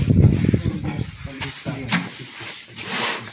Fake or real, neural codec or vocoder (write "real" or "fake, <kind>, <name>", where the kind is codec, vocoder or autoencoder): real